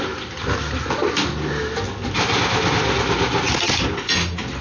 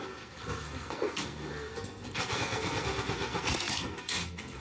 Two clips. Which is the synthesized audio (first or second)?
second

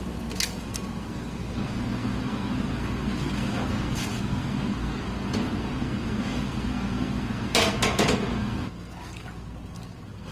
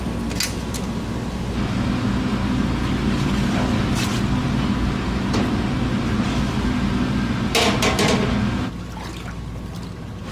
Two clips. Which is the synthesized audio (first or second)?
first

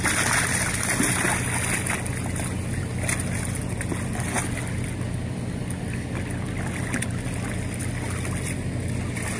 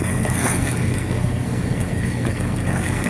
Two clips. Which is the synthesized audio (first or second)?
second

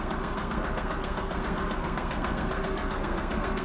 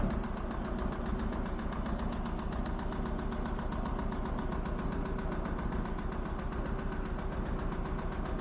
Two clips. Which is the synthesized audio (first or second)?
first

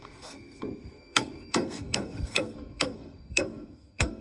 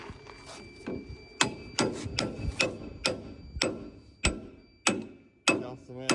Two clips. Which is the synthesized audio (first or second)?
first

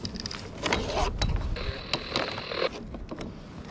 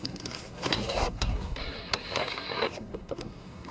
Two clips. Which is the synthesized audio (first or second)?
second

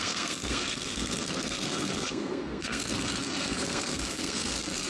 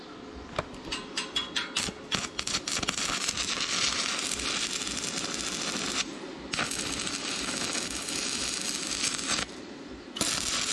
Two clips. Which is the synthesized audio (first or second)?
first